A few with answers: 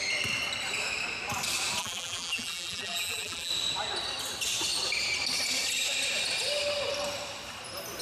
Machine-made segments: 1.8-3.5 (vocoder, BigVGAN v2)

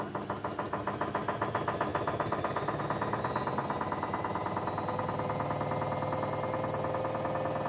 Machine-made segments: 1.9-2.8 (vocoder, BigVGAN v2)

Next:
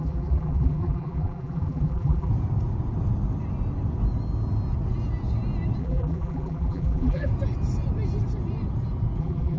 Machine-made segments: 0.0-2.3 (vocoder, BigVGAN v2); 5.8-7.3; 9.2-9.6

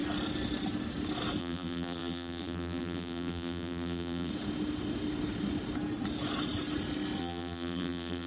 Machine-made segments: 1.4-4.3 (vocoder, BigVGAN v2); 7.2-8.3

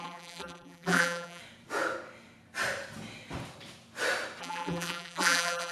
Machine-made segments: 0.0-1.4 (vocoder, BigVGAN v2); 4.4-5.7

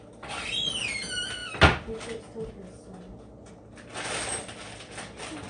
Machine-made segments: none

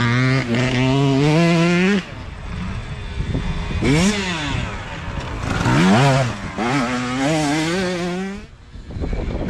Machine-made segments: none

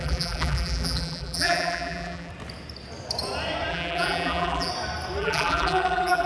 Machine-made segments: 0.0-2.3 (vocoder, BigVGAN v2); 3.7-4.7; 5.2-6.3